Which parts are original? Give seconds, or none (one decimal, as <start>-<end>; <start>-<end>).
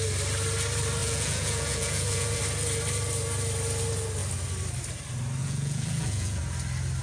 0.0-1.0; 2.4-5.4; 6.4-7.0